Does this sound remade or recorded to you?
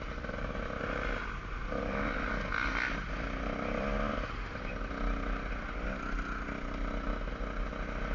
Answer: recorded